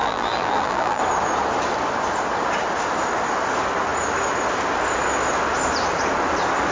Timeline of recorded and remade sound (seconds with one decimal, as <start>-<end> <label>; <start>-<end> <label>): 0.0-1.0 remade; 1.0-6.7 recorded